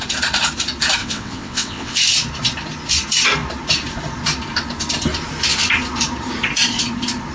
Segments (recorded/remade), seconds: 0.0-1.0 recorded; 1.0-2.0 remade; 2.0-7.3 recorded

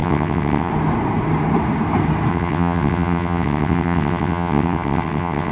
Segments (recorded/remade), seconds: 0.0-0.7 remade; 0.7-2.3 recorded; 2.3-5.5 remade

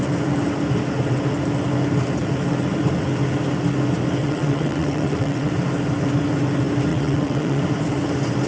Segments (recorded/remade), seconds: 0.0-4.2 recorded; 4.2-5.5 remade; 5.5-6.9 recorded; 6.9-7.6 remade; 7.6-8.5 recorded

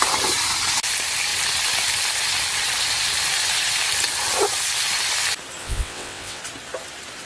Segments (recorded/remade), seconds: 0.0-5.6 recorded; 5.6-6.4 remade; 6.4-7.3 recorded

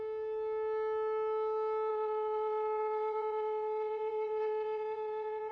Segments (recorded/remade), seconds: 0.0-1.9 recorded; 1.9-5.5 remade